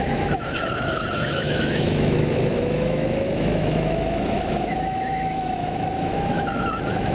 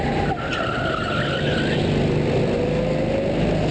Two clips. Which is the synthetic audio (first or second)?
first